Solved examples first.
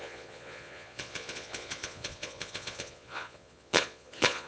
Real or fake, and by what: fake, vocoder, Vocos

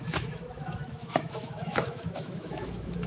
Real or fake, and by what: fake, autoencoder, DAC-VAE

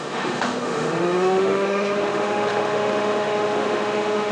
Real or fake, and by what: fake, autoencoder, DAC-VAE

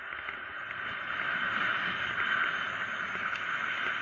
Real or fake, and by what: real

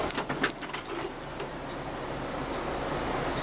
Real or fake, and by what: real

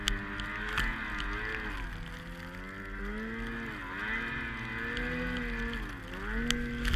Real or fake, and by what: real